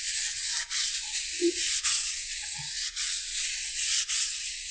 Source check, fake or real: fake